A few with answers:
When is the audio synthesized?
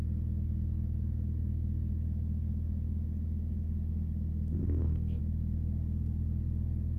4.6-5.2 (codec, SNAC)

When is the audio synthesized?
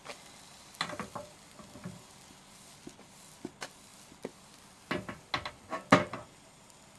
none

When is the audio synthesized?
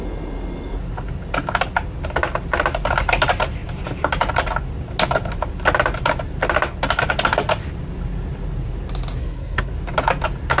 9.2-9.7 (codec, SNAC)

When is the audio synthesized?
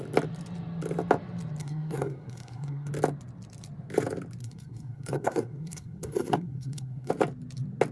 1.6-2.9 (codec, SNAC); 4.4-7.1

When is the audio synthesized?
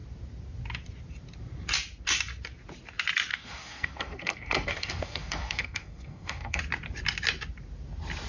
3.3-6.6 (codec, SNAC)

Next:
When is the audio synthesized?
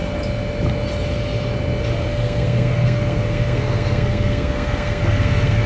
2.1-5.7 (codec, SNAC)